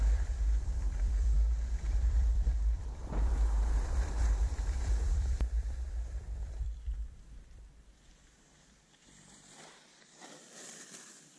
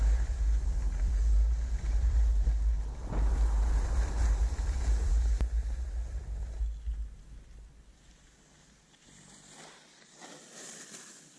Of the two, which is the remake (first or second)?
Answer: first